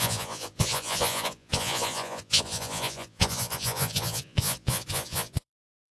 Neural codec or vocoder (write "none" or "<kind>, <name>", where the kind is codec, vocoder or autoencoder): vocoder, Vocos